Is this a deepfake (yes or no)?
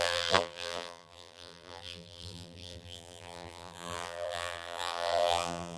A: yes